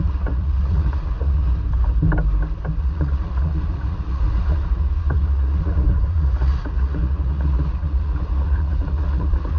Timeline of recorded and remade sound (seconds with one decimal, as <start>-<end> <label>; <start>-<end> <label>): 0.0-1.4 remade; 1.4-2.8 recorded; 2.8-9.6 remade